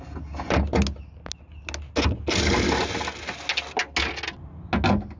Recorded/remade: recorded